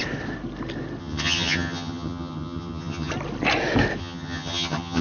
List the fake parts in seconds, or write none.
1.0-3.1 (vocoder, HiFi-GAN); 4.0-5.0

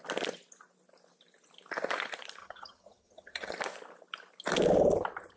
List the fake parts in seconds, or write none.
2.4-3.5 (vocoder, HiFi-GAN)

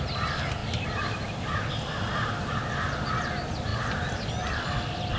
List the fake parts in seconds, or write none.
none

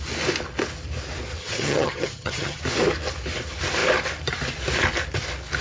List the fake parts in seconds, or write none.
1.4-2.6 (vocoder, HiFi-GAN)